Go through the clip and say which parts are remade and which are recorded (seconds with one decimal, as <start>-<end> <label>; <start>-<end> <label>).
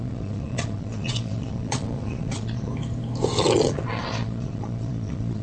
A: 0.0-2.7 remade; 2.7-3.4 recorded; 3.4-5.4 remade